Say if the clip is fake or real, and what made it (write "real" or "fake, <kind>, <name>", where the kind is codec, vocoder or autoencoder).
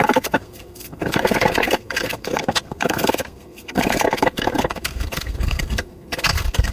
fake, codec, SNAC